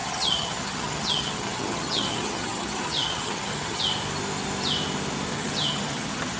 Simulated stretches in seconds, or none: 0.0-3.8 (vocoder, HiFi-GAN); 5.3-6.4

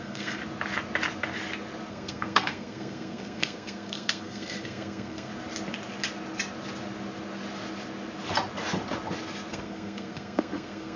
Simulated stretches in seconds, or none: 0.0-0.4 (codec, SNAC); 1.9-5.3; 9.5-11.0

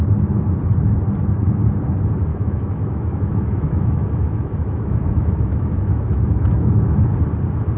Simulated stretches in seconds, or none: 2.3-7.0 (autoencoder, DAC-VAE)

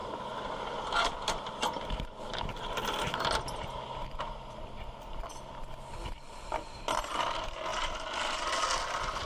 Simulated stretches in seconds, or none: 4.2-7.7 (vocoder, BigVGAN v2); 8.8-9.3

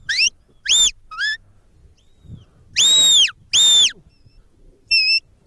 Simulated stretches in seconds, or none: none

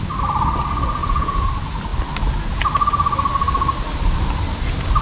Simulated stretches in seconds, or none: 1.0-1.5 (vocoder, Vocos)

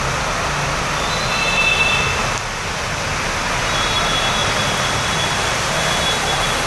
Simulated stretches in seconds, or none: 4.4-5.8 (vocoder, BigVGAN v2)

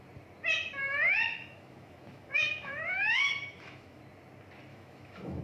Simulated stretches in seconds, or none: 0.8-4.0 (autoencoder, DAC-VAE); 4.7-5.4